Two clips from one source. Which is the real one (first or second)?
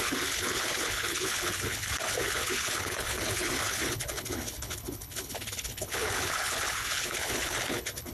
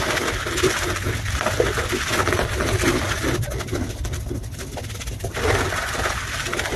second